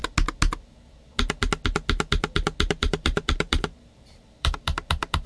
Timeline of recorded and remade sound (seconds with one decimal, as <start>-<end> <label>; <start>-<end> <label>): 0.0-2.7 recorded; 2.7-5.3 remade